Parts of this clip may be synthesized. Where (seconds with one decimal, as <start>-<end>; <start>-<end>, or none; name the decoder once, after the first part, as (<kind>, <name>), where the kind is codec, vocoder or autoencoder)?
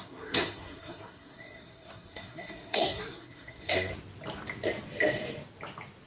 0.0-3.9 (codec, SNAC)